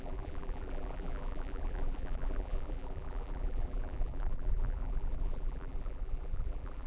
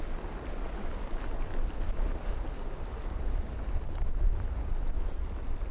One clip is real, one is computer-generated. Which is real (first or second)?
second